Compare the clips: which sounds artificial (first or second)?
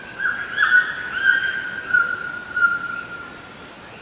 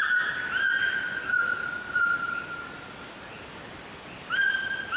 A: second